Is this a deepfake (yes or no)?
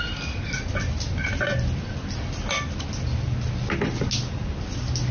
no